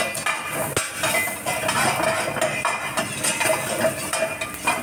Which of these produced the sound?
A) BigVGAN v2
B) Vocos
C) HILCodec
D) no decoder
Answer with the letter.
D